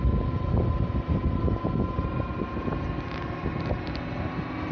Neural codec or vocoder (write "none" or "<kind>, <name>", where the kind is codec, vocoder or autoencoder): none